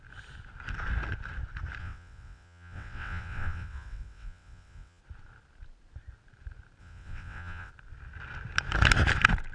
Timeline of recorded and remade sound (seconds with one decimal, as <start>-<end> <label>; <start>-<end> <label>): 0.0-1.8 recorded; 1.8-5.0 remade; 5.0-6.8 recorded; 6.8-7.7 remade; 7.7-9.5 recorded